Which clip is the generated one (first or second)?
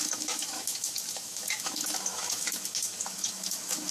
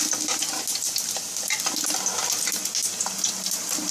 first